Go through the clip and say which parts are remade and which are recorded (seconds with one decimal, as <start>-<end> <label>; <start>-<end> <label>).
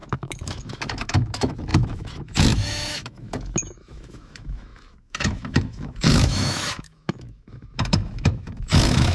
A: 0.0-9.1 remade